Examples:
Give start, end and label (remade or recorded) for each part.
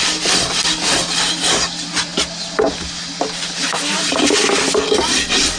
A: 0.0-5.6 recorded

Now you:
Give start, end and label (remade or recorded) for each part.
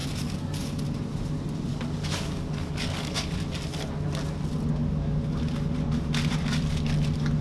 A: 0.0-0.8 remade; 0.8-1.7 recorded; 1.7-3.3 remade; 3.3-7.4 recorded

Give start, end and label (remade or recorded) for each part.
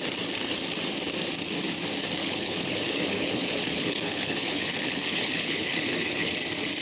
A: 0.0-2.2 recorded; 2.2-6.3 remade; 6.3-6.8 recorded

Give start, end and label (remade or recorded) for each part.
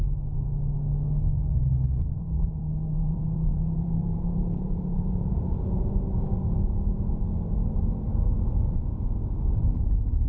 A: 0.0-2.1 recorded; 2.1-10.3 remade